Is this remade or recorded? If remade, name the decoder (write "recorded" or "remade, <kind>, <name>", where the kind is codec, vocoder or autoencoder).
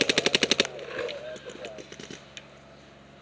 recorded